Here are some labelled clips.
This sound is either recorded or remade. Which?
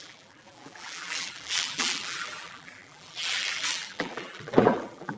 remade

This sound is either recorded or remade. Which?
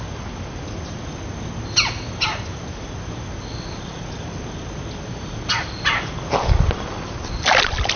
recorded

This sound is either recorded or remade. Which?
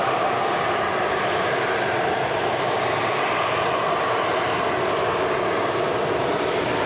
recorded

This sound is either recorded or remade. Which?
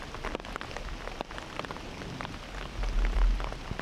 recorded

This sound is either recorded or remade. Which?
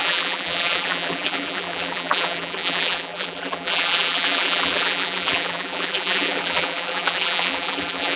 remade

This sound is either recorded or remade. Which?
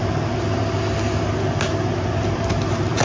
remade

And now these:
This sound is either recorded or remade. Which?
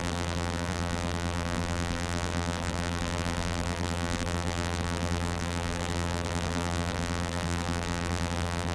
remade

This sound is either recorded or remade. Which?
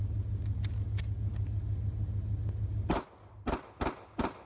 recorded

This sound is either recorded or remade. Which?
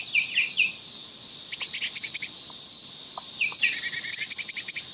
recorded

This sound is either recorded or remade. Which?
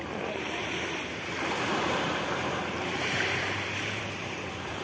remade